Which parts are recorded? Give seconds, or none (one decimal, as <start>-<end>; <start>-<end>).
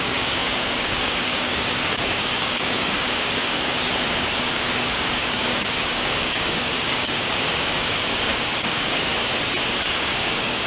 9.1-9.8